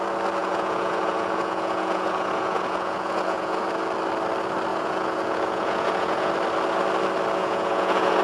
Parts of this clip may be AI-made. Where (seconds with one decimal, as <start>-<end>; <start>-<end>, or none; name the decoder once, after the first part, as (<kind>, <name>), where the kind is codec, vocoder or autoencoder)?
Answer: 0.4-3.6 (vocoder, Vocos); 4.7-6.3; 7.4-8.2